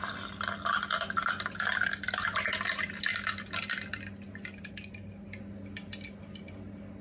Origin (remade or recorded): recorded